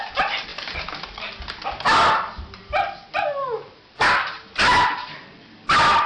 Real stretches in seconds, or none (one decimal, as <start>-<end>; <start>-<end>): 0.0-6.1